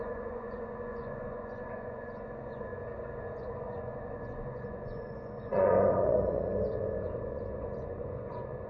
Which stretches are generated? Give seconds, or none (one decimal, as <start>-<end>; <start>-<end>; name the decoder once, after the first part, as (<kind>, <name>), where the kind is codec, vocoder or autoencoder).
0.0-2.7 (vocoder, Vocos); 3.4-8.7